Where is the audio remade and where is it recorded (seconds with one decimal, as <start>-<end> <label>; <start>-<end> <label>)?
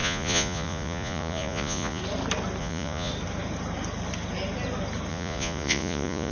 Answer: 0.0-2.0 remade; 2.0-2.6 recorded; 2.6-3.1 remade; 3.1-5.1 recorded; 5.1-6.3 remade